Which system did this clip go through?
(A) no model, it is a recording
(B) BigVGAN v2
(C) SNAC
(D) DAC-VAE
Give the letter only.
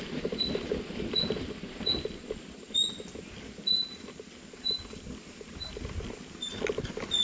A